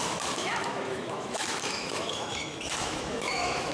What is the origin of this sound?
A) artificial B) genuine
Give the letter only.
A